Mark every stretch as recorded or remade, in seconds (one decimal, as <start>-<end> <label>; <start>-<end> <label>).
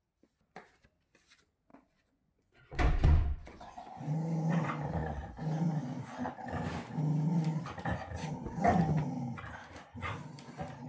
0.0-1.7 recorded; 1.7-4.6 remade; 4.6-5.0 recorded; 5.0-5.6 remade; 5.6-10.9 recorded